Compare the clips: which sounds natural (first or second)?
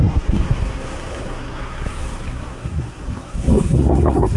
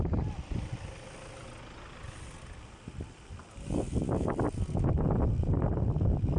second